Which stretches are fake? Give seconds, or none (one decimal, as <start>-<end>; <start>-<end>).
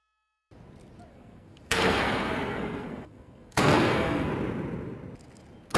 1.1-4.3